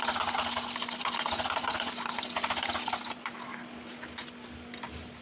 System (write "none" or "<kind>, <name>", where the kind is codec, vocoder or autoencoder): none